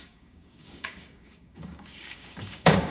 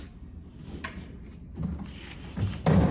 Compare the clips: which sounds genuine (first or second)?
second